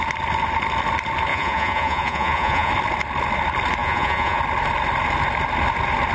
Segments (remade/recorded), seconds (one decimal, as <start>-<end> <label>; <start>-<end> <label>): 0.0-1.3 recorded; 1.3-2.7 remade; 2.7-3.8 recorded; 3.8-4.4 remade; 4.4-6.1 recorded